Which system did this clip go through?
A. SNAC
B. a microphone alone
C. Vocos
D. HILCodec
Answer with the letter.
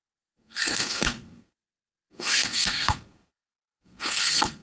A